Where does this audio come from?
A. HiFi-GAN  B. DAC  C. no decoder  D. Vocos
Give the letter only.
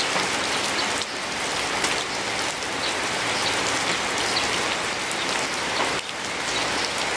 C